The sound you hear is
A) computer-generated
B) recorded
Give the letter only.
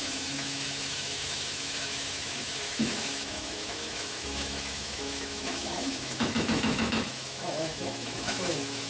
A